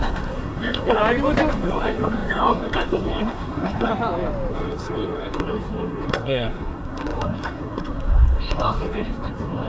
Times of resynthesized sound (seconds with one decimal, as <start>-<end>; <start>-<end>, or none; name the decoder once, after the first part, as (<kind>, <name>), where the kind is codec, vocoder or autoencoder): 0.0-1.0 (codec, SNAC); 1.5-3.9; 4.5-9.7